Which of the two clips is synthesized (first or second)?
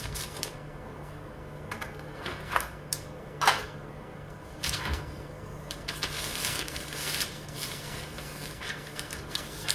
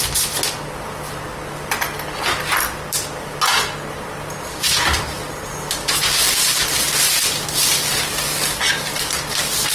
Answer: first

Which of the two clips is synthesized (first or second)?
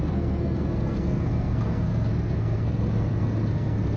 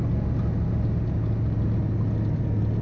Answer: first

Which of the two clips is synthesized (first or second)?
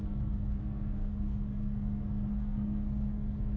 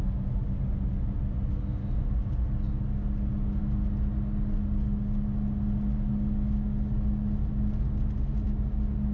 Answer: first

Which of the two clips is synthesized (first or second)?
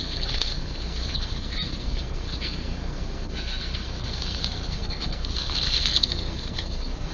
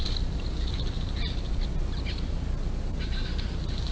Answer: first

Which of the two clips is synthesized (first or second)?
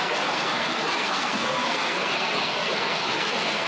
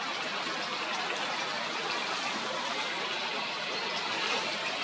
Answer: first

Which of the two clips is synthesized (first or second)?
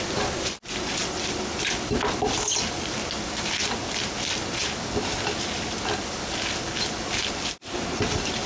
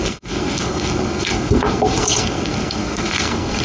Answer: second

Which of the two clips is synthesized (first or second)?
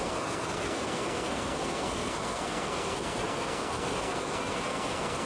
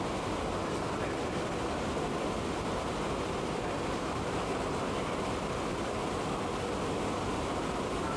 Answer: first